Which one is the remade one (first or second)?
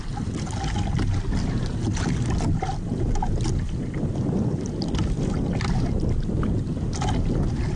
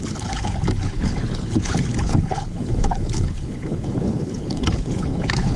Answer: second